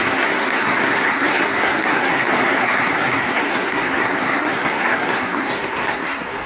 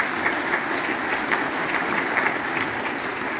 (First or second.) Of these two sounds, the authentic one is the second